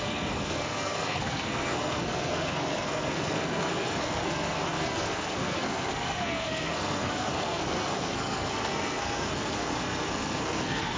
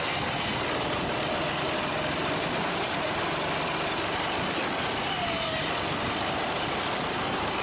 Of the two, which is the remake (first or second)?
first